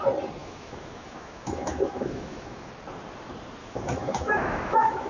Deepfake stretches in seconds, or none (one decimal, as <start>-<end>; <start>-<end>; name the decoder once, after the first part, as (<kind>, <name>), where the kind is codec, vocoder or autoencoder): 0.4-2.7 (autoencoder, DAC-VAE); 3.6-5.1

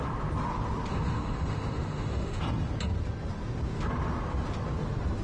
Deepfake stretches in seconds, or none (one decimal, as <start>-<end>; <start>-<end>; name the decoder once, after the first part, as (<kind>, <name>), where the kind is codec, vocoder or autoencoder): 0.9-2.4 (autoencoder, DAC-VAE)